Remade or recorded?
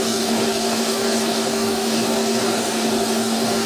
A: remade